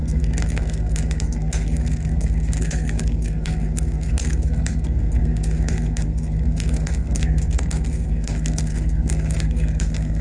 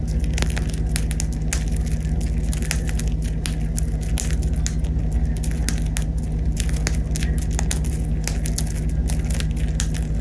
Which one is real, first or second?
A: second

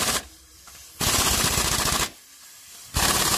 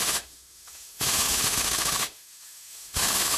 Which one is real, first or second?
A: first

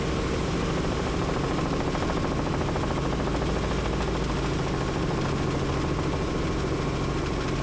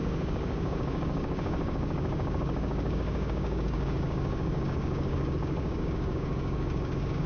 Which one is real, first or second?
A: first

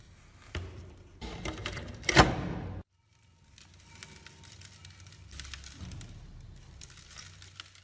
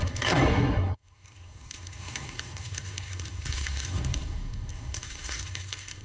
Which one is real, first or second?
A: first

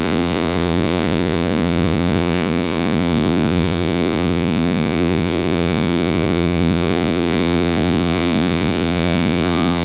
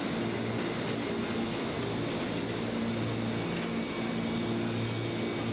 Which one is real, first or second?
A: second